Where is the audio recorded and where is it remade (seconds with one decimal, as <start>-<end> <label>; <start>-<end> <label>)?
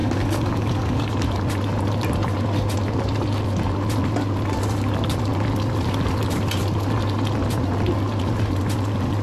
0.0-1.1 remade; 1.1-9.2 recorded